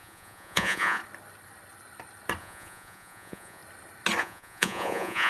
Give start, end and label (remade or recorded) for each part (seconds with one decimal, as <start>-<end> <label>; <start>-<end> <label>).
0.0-1.0 remade; 1.0-2.4 recorded; 2.4-3.6 remade; 3.6-4.2 recorded; 4.2-5.3 remade